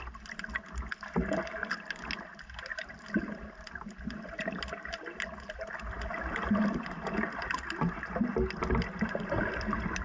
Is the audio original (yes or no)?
yes